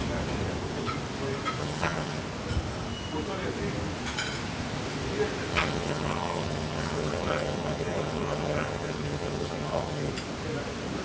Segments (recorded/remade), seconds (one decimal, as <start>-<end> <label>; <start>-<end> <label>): 0.0-1.6 recorded; 1.6-2.2 remade; 2.2-5.5 recorded; 5.5-10.1 remade; 10.1-11.0 recorded